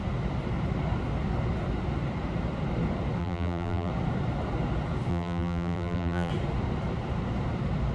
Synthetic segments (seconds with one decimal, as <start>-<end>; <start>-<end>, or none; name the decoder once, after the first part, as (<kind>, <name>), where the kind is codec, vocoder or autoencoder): 3.2-3.9 (vocoder, BigVGAN v2); 5.1-6.3